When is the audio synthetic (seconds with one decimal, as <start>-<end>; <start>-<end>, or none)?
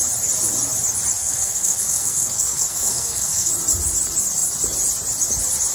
1.2-3.5